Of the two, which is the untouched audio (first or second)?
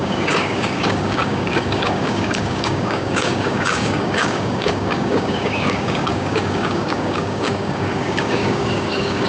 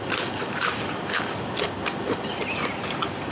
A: second